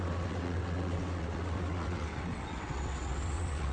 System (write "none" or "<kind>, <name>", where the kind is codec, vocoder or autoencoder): vocoder, WaveNeXt